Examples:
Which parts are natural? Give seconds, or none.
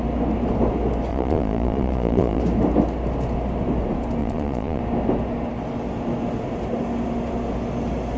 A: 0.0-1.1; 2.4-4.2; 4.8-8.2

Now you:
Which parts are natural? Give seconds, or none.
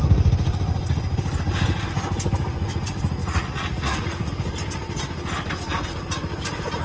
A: 0.0-3.2; 4.3-6.8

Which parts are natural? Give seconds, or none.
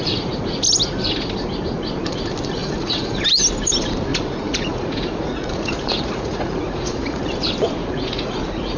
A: 0.0-2.6; 3.2-4.1; 7.2-7.8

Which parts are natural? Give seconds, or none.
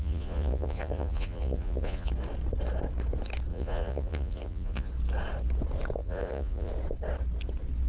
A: 2.1-3.5; 4.9-6.0; 6.7-7.9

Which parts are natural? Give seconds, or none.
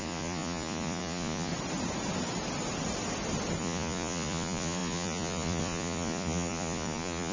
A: 1.5-3.6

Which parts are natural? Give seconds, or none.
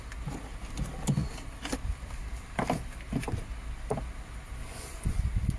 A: 0.0-4.6; 5.1-5.6